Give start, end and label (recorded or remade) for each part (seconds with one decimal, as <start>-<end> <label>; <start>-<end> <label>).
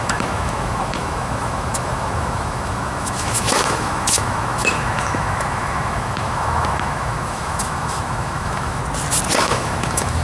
0.0-8.8 remade; 8.8-9.4 recorded; 9.4-10.2 remade